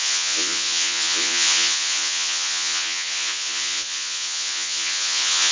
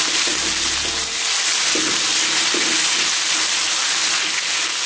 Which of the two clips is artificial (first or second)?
first